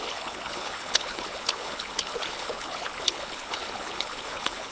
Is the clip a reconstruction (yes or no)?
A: yes